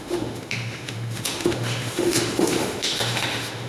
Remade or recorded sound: remade